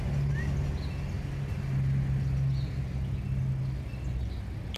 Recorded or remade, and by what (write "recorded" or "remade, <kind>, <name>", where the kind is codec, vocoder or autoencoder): recorded